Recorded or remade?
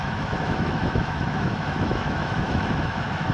remade